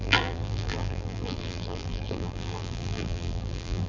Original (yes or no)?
no